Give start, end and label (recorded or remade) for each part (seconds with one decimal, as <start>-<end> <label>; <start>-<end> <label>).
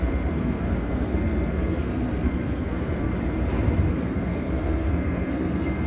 0.0-3.1 remade; 3.1-3.9 recorded; 3.9-5.9 remade